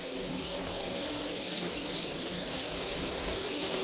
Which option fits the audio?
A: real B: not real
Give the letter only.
B